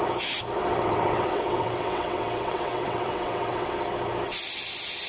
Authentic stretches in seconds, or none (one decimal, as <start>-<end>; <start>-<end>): 0.0-0.6; 3.7-5.1